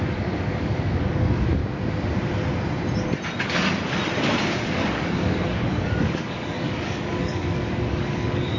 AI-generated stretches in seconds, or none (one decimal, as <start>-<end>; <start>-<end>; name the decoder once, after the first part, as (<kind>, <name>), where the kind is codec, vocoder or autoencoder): 0.0-1.6 (codec, DAC); 4.5-8.6